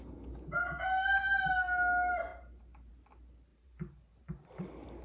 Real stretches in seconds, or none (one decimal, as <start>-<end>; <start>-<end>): 0.0-3.5; 4.5-5.0